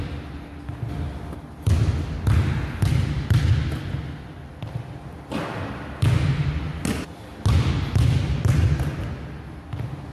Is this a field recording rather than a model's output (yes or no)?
yes